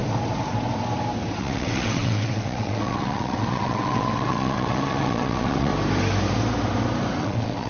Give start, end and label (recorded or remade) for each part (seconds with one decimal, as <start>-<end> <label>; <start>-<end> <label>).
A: 0.0-1.4 recorded; 1.4-5.7 remade; 5.7-7.2 recorded; 7.2-7.7 remade